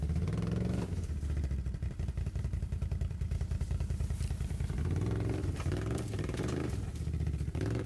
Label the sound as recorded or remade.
remade